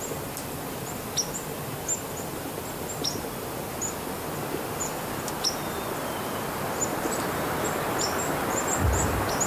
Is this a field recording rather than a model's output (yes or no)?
yes